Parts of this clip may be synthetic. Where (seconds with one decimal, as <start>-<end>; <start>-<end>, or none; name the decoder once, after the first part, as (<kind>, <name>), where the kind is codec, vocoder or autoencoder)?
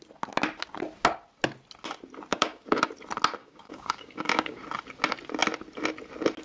2.3-2.9 (codec, DAC); 3.4-4.6